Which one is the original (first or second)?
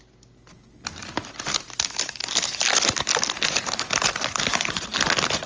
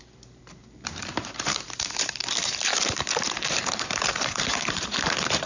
first